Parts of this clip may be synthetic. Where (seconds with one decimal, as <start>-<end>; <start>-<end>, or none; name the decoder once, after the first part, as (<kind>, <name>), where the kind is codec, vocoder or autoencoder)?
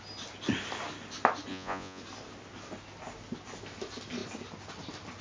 1.5-2.0 (vocoder, Vocos)